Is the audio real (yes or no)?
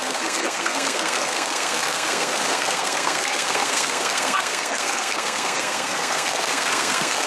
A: no